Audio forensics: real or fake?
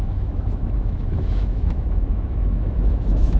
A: fake